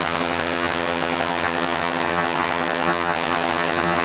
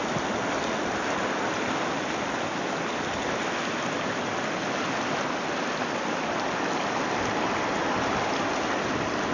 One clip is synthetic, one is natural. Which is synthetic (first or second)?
first